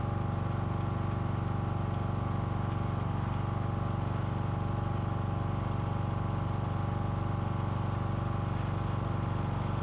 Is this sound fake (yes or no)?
no